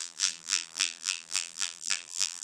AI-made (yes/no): yes